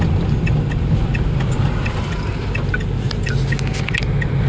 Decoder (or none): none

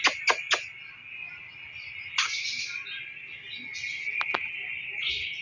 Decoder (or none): none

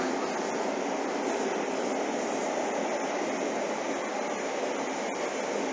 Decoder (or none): none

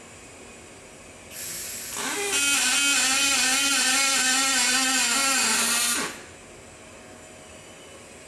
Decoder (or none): none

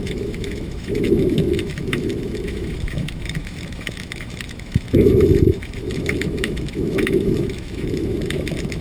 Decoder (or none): autoencoder, DAC-VAE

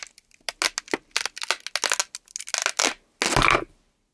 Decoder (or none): none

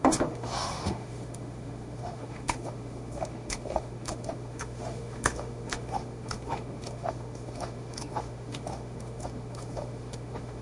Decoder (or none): autoencoder, DAC-VAE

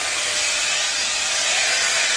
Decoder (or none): none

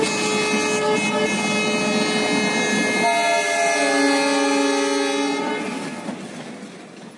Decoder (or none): none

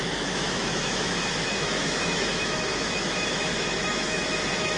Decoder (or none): autoencoder, DAC-VAE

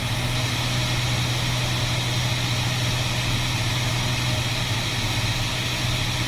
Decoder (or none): none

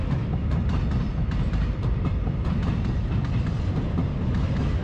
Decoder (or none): none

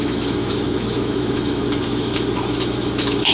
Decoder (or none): autoencoder, DAC-VAE